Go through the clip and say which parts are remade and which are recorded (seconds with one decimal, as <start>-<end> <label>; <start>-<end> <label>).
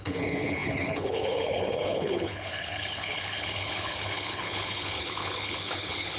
0.0-6.2 remade